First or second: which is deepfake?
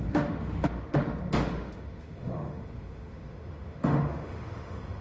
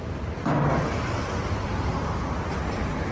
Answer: first